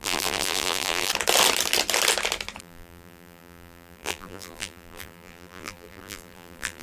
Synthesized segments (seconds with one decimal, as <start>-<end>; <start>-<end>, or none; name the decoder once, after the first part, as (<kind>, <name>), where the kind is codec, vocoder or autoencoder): 0.0-1.1 (vocoder, BigVGAN v2); 2.6-6.8